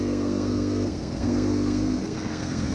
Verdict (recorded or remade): remade